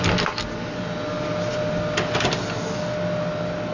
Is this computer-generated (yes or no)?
no